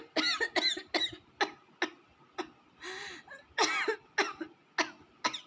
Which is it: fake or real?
real